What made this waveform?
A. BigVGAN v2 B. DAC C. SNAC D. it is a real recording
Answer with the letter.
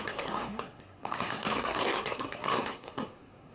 C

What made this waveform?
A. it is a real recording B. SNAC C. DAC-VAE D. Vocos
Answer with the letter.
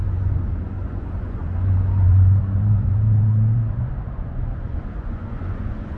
D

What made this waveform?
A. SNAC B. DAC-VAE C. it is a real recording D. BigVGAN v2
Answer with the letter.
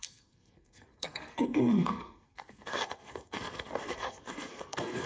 A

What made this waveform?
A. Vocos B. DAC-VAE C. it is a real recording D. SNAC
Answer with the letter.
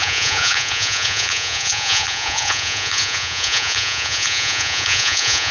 A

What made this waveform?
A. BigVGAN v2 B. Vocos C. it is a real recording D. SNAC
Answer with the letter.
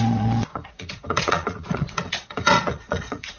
B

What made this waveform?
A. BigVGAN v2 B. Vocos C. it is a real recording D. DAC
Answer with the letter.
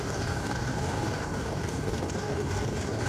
D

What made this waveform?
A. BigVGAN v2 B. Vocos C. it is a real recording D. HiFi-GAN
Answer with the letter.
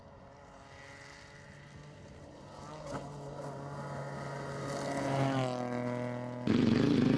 C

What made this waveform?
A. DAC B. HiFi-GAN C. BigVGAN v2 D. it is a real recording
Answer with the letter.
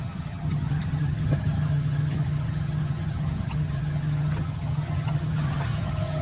B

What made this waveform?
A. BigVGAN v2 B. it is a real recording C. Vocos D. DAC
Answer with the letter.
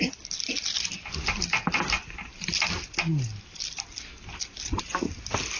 B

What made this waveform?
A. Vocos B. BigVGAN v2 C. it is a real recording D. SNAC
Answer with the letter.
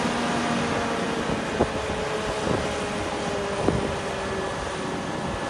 C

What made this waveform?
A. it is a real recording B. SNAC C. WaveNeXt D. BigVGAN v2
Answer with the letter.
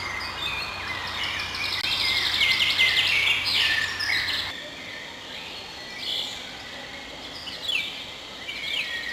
A